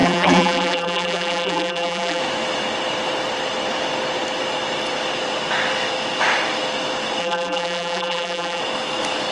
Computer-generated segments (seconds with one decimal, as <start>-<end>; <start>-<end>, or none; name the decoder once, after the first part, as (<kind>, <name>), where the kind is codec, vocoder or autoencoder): 0.0-2.2 (vocoder, BigVGAN v2); 7.2-8.6